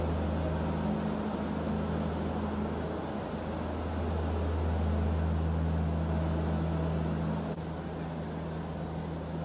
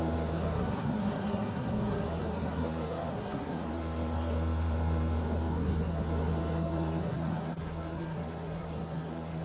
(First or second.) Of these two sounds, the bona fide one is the first